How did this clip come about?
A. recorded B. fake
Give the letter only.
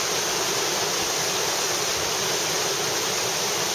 A